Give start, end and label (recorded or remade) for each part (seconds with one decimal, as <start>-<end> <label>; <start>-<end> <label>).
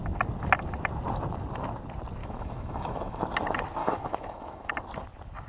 0.0-2.2 recorded; 2.2-3.2 remade; 3.2-3.8 recorded; 3.8-4.7 remade; 4.7-5.5 recorded